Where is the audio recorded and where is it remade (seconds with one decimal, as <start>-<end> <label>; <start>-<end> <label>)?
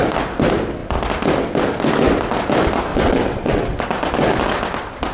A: 0.0-2.9 recorded; 2.9-3.8 remade; 3.8-5.1 recorded